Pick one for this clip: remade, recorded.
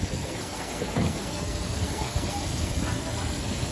remade